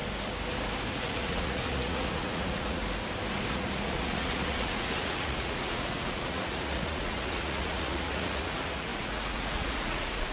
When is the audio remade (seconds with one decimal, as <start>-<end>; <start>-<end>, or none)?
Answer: 0.9-2.8; 3.5-10.3